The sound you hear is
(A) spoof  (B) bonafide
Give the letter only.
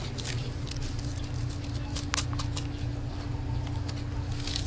B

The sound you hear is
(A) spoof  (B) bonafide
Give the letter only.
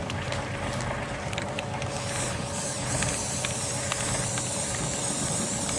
B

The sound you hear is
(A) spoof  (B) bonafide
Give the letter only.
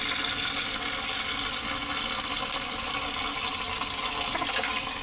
B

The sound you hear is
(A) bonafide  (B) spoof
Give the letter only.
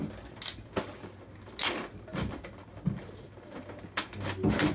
A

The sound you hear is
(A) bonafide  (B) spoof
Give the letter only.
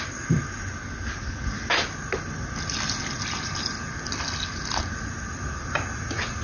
A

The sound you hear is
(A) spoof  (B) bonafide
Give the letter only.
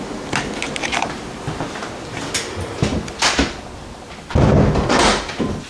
B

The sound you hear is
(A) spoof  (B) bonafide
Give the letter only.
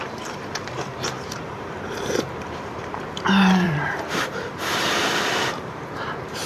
A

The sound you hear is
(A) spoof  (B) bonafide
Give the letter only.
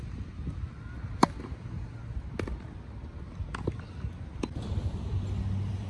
B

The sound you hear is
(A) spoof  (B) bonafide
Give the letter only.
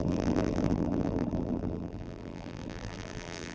A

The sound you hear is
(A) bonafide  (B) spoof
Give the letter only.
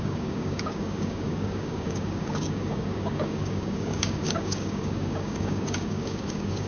B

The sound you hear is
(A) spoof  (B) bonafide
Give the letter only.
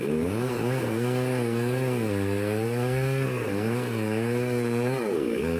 A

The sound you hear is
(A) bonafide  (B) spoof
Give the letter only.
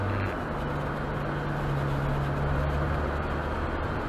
A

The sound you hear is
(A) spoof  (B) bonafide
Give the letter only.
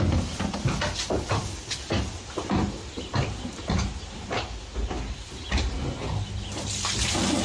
B